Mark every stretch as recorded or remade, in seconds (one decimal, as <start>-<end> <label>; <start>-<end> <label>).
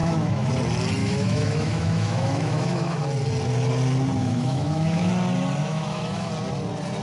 0.0-0.5 remade; 0.5-1.0 recorded; 1.0-3.0 remade; 3.0-4.2 recorded; 4.2-5.1 remade; 5.1-5.6 recorded; 5.6-6.3 remade; 6.3-7.0 recorded